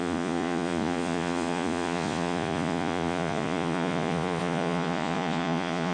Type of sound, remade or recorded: remade